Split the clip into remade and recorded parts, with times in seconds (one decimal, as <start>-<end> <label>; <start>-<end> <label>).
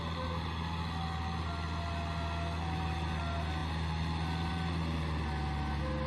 0.0-6.1 recorded